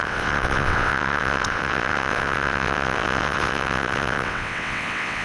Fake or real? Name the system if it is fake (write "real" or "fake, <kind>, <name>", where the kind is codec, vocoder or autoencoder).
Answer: fake, vocoder, WaveNeXt